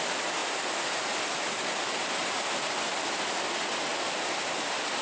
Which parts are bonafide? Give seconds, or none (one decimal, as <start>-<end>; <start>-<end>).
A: 0.0-5.0